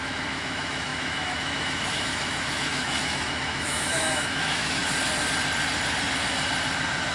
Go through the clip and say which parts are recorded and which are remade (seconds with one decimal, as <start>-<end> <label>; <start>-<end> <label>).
0.0-4.8 remade; 4.8-7.1 recorded